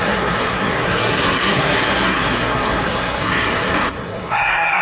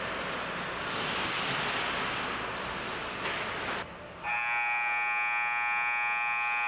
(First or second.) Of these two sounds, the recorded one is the second